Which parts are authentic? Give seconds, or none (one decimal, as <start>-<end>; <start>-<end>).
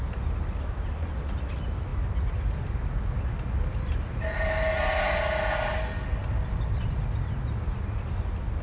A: 0.0-8.6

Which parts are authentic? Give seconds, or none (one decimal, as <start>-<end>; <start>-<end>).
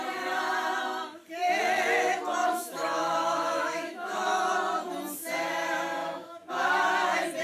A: 0.0-2.4; 4.4-6.0; 6.5-7.4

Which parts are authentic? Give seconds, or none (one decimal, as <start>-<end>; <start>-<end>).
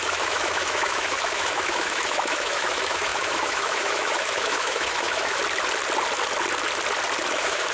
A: 5.4-7.3